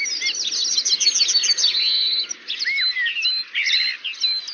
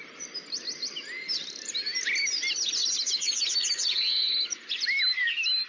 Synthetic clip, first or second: second